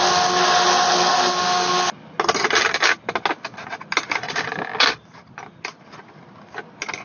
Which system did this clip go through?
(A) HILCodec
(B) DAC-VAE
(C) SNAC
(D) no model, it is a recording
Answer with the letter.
D